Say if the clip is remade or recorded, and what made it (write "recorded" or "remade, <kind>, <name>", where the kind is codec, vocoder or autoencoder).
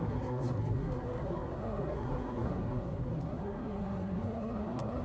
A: remade, codec, SNAC